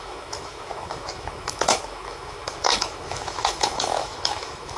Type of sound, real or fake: fake